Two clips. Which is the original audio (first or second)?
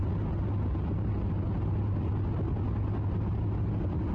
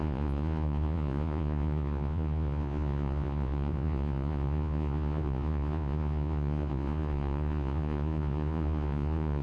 first